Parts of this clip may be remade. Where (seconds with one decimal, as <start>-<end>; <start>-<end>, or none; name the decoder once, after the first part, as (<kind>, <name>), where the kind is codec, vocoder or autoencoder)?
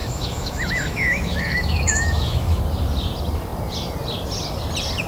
0.0-2.6 (autoencoder, DAC-VAE)